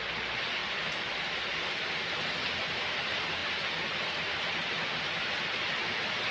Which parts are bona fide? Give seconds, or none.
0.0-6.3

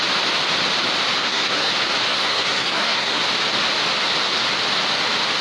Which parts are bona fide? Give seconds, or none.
0.0-1.2; 1.7-2.1; 3.2-5.4

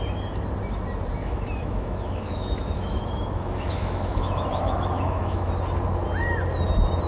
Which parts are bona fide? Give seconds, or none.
0.0-1.2; 5.5-7.1

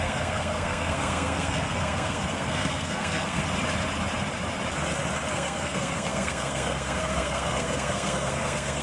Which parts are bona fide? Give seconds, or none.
3.4-5.3

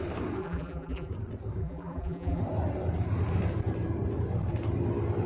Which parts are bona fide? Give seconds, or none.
0.0-0.4; 1.1-1.6; 2.4-5.3

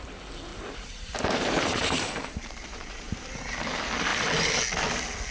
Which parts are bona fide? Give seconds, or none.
0.0-0.5; 3.6-4.1; 4.6-5.3